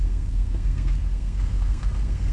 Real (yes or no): no